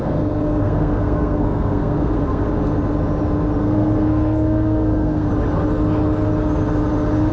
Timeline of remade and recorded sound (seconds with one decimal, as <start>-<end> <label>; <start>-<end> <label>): 0.0-2.5 remade; 2.5-3.6 recorded; 3.6-5.3 remade; 5.3-7.3 recorded